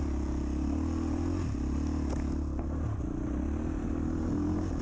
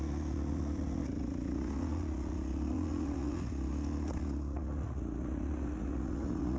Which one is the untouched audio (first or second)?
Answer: first